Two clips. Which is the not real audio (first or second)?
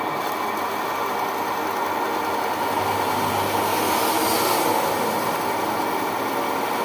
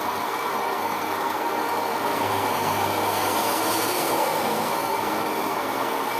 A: second